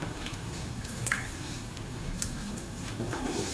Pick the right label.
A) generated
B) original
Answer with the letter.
A